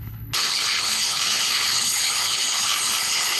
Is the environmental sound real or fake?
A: fake